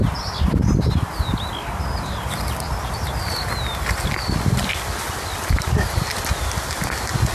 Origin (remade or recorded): recorded